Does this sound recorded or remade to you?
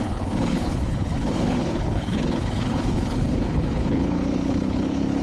remade